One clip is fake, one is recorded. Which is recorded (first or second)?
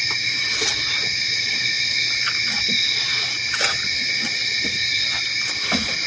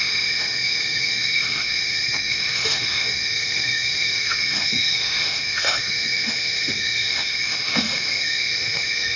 first